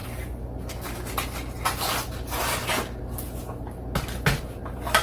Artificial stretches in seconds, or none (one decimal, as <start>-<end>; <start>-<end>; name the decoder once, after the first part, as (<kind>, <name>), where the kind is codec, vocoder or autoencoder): none